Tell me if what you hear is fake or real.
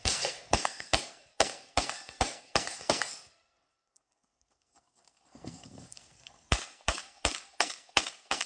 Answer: fake